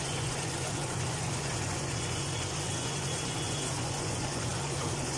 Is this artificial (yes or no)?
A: yes